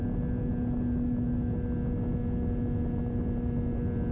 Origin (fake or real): real